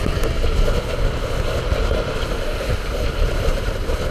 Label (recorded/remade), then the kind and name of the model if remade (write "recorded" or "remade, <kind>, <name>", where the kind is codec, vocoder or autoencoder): recorded